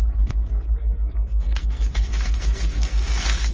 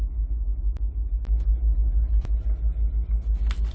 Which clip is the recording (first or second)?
second